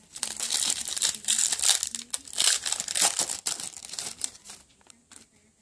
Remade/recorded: recorded